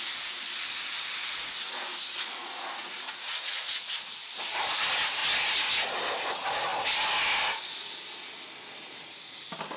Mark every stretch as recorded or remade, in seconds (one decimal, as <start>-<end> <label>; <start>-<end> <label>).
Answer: 0.0-2.4 recorded; 2.4-3.9 remade; 3.9-9.8 recorded